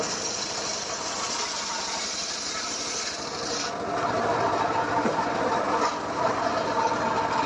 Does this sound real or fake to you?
real